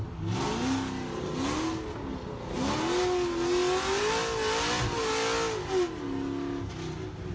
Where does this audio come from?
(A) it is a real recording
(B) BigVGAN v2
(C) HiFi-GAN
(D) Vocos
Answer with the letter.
A